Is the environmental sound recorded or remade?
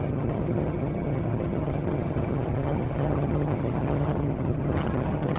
remade